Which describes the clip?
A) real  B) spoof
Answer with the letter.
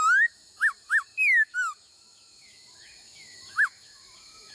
B